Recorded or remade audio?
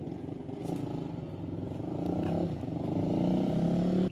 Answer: recorded